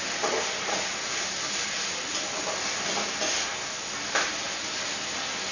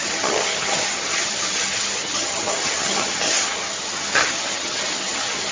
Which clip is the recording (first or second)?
first